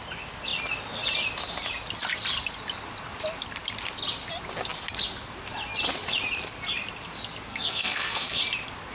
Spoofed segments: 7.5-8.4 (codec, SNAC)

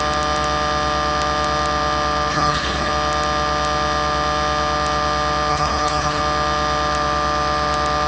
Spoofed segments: 2.3-2.9 (codec, HILCodec); 5.5-6.2

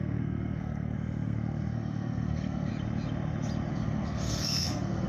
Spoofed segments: 0.0-2.7 (codec, SNAC); 3.7-5.1

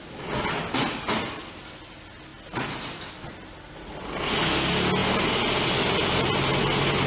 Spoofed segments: none

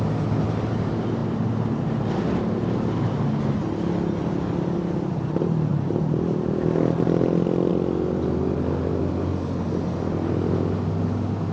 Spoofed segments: none

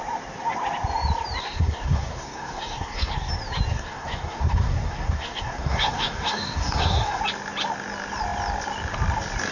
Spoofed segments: 1.4-3.3 (codec, SNAC); 3.7-7.2

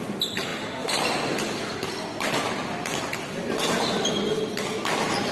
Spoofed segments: none

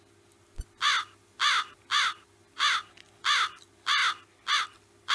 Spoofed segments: none